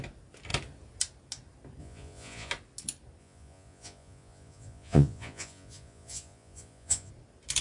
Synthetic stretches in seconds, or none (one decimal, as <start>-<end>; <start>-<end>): 1.8-2.5; 3.2-7.1